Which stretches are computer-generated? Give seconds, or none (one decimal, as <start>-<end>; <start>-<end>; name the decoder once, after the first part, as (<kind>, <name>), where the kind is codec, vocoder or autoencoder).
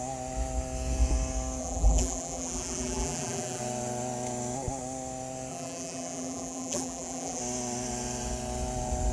1.6-3.6 (vocoder, BigVGAN v2); 5.5-7.4